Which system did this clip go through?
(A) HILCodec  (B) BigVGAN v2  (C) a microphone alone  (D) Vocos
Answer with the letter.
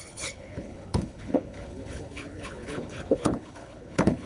A